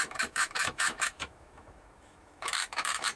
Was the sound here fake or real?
fake